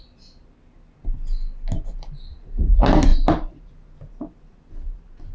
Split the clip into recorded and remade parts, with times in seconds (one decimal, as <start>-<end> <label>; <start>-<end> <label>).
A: 0.0-3.1 recorded; 3.1-3.7 remade; 3.7-5.3 recorded